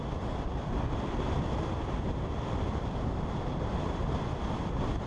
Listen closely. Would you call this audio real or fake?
real